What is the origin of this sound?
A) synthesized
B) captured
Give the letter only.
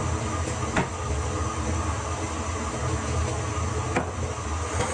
B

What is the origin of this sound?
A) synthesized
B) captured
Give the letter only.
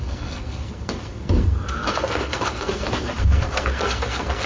A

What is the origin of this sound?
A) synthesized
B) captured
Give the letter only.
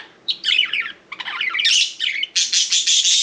B